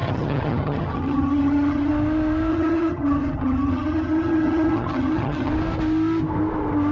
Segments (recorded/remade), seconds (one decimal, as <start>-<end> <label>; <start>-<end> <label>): 0.0-1.9 remade; 1.9-2.5 recorded; 2.5-5.5 remade; 5.5-6.9 recorded